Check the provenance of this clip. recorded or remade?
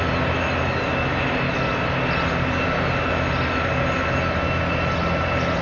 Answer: recorded